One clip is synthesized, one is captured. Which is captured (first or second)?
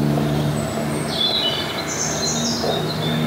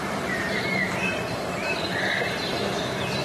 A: first